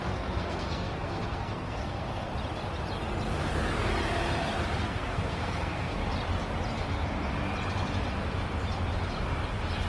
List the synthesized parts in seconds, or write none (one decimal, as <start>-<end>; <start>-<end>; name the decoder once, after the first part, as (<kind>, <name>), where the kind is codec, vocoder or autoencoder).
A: 0.0-2.3 (codec, SNAC); 4.8-6.0